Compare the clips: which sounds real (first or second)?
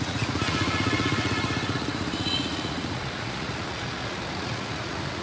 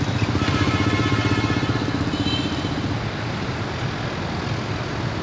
second